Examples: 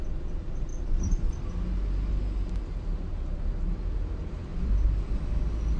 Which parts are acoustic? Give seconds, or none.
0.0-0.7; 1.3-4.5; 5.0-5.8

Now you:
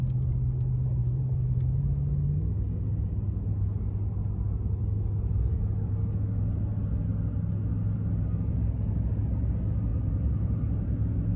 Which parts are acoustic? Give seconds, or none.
0.0-1.0; 1.6-9.9; 10.5-11.4